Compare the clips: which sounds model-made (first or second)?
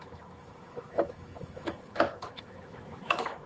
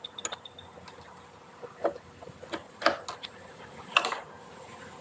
first